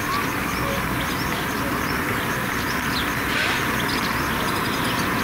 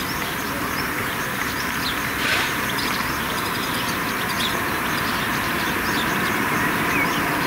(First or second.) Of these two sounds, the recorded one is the first